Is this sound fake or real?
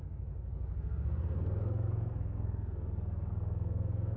fake